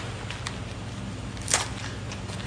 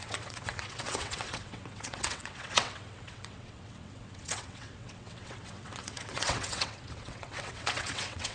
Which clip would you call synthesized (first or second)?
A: second